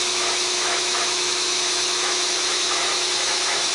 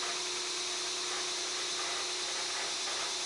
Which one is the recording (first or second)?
second